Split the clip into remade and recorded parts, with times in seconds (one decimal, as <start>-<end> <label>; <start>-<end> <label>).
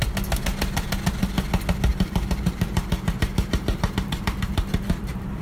0.0-1.9 recorded; 1.9-5.4 remade